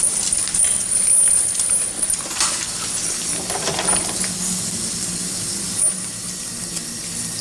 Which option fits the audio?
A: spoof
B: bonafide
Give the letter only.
B